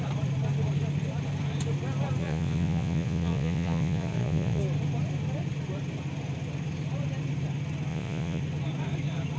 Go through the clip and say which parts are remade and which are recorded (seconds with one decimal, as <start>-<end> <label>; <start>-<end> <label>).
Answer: 0.0-2.2 recorded; 2.2-4.6 remade; 4.6-7.9 recorded; 7.9-8.4 remade; 8.4-9.4 recorded